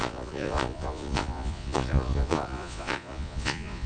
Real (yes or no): no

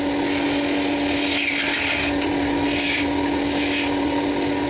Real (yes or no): yes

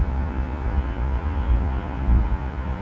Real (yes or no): no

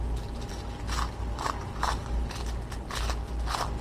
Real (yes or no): yes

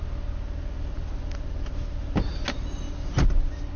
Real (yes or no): yes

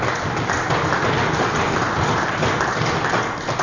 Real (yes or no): yes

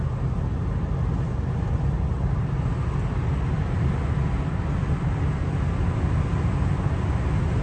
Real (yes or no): yes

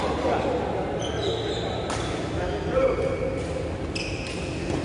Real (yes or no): yes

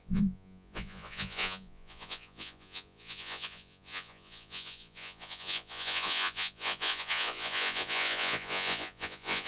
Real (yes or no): no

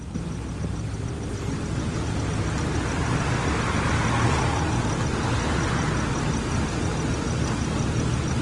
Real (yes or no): yes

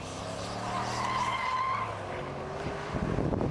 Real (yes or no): yes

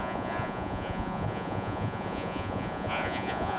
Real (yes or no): no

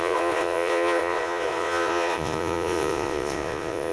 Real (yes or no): no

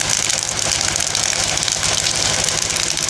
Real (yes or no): yes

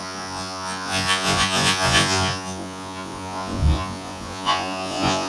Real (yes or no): no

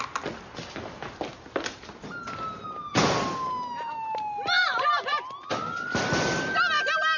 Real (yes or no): yes